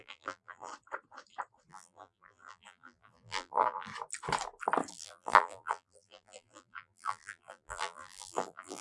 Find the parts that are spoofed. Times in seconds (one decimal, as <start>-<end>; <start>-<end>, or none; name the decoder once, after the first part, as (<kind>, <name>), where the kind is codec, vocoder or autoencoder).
0.0-0.7 (vocoder, BigVGAN v2); 1.7-3.9; 4.9-8.8